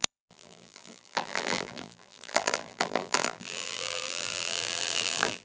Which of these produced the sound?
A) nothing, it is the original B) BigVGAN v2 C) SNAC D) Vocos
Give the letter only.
B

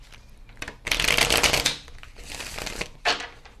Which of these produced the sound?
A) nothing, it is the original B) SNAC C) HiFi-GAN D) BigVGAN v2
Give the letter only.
A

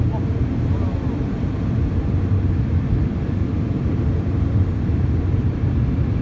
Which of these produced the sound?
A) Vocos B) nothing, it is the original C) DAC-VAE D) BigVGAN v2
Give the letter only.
B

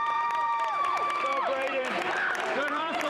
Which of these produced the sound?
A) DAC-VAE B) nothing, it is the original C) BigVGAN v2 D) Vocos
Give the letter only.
C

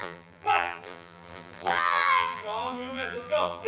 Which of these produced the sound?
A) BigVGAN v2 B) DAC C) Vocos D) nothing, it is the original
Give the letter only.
A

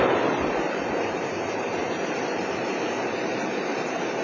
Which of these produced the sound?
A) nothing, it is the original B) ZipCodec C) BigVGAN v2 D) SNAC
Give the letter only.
C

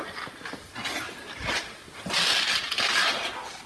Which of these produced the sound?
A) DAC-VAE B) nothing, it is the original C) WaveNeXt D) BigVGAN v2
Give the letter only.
B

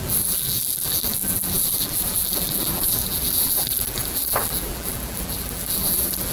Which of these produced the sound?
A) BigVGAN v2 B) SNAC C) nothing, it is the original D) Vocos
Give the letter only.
A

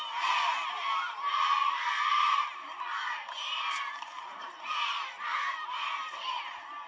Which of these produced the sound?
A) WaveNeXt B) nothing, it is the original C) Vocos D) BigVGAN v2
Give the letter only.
B